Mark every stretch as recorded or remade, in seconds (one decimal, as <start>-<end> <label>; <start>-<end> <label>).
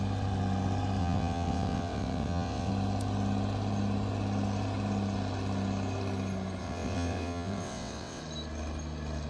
0.0-1.0 recorded; 1.0-2.7 remade; 2.7-6.6 recorded; 6.6-8.2 remade; 8.2-9.3 recorded